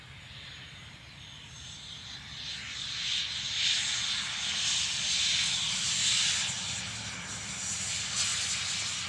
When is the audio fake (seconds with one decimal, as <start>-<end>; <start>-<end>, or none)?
none

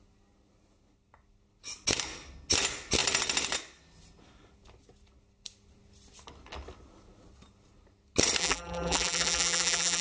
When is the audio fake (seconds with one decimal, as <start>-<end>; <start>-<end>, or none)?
8.4-10.0

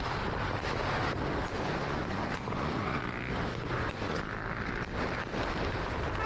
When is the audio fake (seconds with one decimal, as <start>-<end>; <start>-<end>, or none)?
1.5-3.0; 3.5-4.2

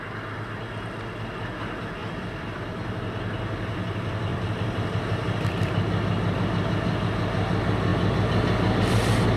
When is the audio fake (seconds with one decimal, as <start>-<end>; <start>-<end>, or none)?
2.0-2.9; 4.3-6.4

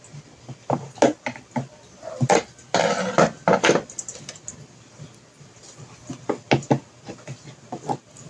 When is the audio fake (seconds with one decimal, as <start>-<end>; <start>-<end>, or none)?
none

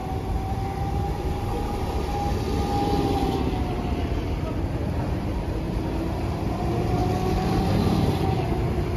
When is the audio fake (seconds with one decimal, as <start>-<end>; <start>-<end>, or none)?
none

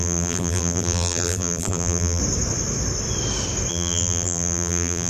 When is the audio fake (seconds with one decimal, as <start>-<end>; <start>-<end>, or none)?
0.0-2.2; 3.7-5.1

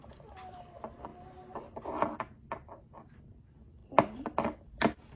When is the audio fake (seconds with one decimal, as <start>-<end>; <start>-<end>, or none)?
0.0-1.1; 3.1-5.2